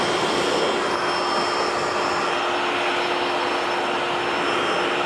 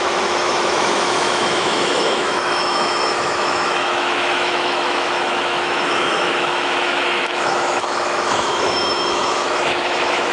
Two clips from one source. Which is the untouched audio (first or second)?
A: first